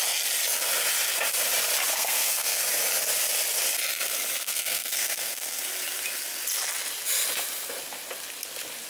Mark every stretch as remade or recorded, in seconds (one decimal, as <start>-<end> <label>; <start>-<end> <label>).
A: 0.0-1.9 recorded; 1.9-2.6 remade; 2.6-4.4 recorded; 4.4-5.6 remade; 5.6-8.9 recorded